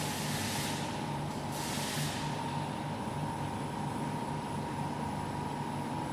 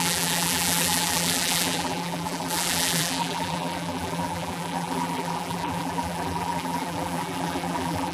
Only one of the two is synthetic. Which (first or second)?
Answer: second